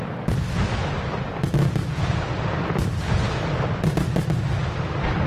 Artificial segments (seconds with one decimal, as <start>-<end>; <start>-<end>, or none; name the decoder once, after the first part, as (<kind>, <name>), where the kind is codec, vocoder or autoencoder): 1.8-3.6 (vocoder, BigVGAN v2)